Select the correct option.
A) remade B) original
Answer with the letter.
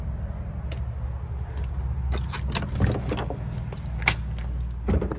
B